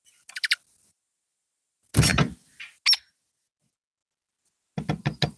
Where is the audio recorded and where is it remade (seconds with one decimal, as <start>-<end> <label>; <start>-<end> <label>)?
0.0-5.4 recorded